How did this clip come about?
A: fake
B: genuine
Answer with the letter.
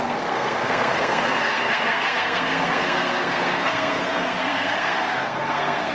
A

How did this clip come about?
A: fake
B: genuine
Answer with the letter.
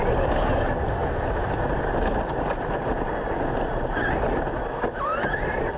B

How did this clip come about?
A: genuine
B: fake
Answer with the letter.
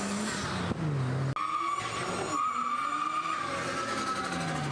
A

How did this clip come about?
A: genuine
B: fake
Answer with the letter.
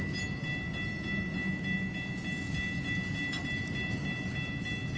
A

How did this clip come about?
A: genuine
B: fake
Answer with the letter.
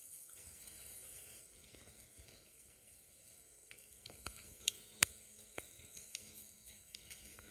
B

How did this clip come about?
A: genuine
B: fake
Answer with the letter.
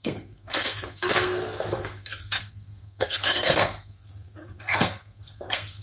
B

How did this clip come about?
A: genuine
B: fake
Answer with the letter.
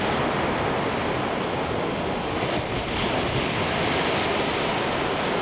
A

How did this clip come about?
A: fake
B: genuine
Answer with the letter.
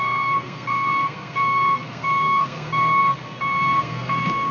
A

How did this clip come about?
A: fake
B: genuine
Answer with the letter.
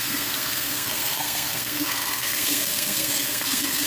A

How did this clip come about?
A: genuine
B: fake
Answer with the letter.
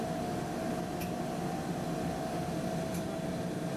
A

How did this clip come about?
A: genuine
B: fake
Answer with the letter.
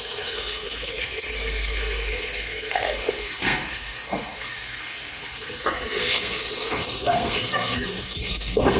B